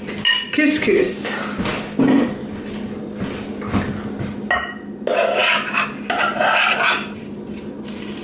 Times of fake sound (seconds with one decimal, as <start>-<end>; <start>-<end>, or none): none